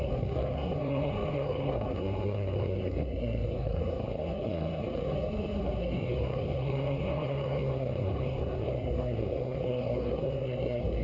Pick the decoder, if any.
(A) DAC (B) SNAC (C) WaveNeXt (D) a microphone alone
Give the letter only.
B